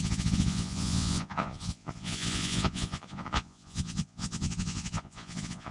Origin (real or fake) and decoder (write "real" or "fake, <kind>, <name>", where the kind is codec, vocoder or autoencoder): fake, vocoder, Vocos